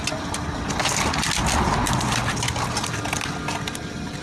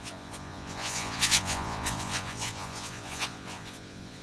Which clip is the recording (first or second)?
first